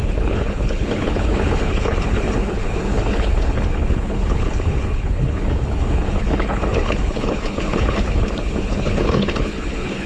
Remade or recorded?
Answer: remade